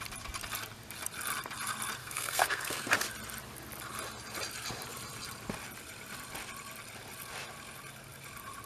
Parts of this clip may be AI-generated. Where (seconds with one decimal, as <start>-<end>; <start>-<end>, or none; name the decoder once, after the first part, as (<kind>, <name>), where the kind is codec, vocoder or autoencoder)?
2.0-2.9 (codec, SNAC)